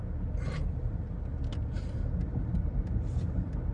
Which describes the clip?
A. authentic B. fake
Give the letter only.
A